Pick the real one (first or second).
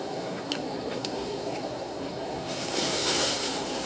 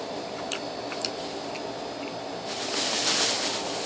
second